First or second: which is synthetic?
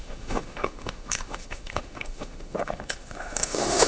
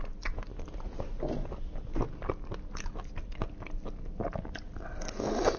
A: first